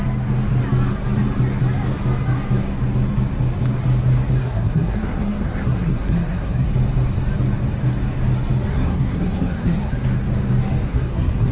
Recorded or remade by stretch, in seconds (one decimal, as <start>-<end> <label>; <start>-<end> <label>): 0.0-4.4 recorded; 4.4-6.7 remade; 6.7-8.7 recorded; 8.7-9.9 remade; 9.9-10.9 recorded; 10.9-11.5 remade